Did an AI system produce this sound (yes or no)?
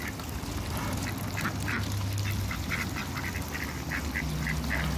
no